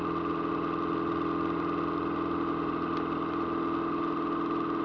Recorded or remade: recorded